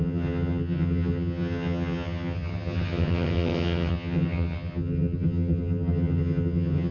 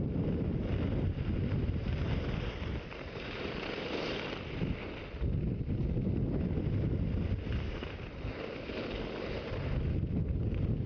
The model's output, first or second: first